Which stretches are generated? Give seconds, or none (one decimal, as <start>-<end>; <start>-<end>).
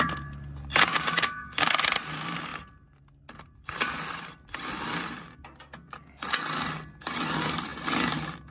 0.9-1.7